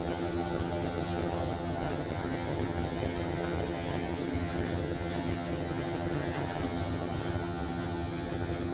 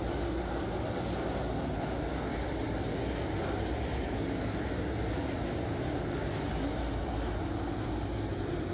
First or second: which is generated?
first